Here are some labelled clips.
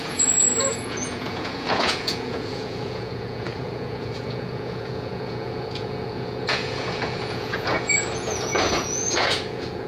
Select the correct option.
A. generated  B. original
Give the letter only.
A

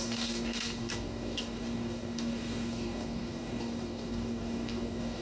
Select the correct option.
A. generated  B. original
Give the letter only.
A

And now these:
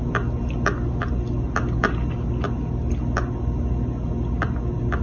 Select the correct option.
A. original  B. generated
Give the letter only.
A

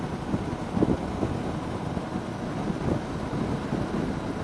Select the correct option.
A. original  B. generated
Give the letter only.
A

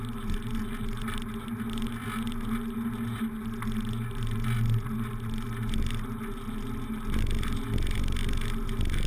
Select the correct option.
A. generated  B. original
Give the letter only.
B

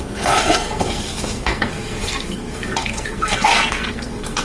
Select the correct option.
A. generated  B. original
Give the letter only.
A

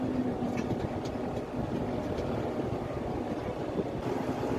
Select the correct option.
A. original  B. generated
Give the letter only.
A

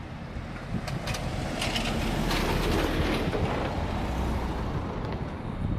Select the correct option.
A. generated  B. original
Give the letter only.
B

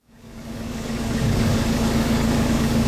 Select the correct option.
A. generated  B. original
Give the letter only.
A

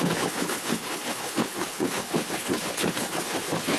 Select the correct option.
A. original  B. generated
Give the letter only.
B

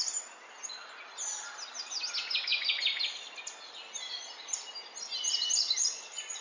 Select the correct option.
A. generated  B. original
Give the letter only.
B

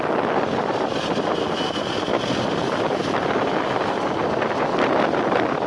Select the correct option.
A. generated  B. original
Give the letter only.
B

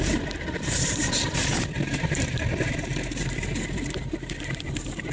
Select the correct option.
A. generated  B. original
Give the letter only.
A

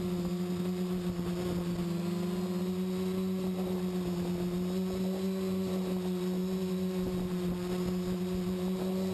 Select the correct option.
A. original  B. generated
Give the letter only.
A